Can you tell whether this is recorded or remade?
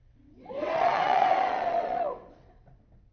remade